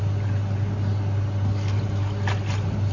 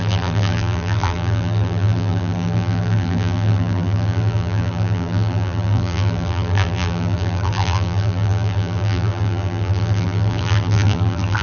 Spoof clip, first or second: second